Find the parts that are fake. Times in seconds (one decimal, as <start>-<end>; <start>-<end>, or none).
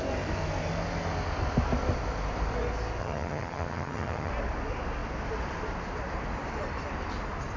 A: 3.0-4.3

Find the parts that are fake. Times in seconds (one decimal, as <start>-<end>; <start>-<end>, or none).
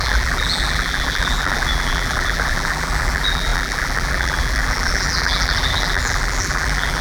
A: 0.0-7.0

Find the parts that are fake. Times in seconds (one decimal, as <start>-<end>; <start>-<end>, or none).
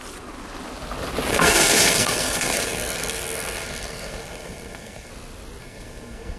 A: 1.3-5.1; 5.6-6.4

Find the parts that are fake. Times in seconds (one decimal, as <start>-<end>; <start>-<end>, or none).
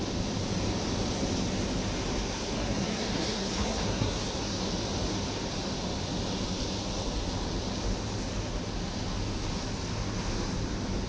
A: 2.3-4.6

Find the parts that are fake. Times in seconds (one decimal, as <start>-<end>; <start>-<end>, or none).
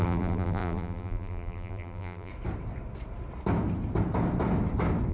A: 0.0-2.3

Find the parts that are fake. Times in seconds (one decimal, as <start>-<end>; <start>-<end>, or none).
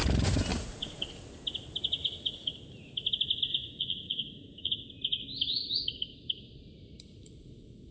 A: 0.5-1.0; 3.6-4.7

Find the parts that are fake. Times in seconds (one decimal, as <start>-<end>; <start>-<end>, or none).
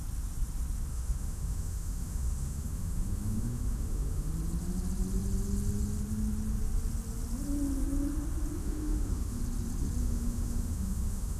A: 0.9-4.3; 8.6-9.4; 10.0-11.4